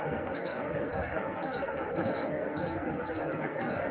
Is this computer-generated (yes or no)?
yes